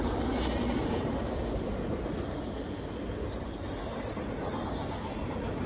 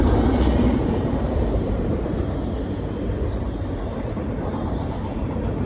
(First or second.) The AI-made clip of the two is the second